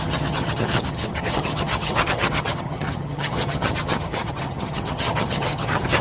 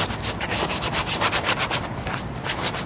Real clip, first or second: second